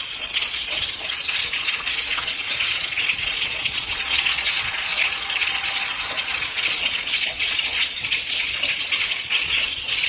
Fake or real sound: fake